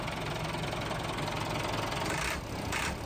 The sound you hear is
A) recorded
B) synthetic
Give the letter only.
A